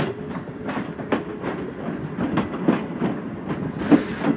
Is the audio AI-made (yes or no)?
no